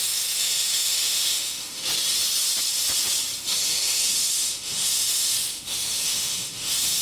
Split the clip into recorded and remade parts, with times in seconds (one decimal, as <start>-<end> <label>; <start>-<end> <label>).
0.0-1.8 remade; 1.8-3.7 recorded; 3.7-7.0 remade